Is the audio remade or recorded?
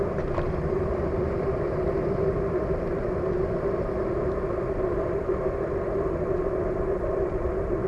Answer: recorded